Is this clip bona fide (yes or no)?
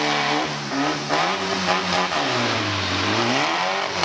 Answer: no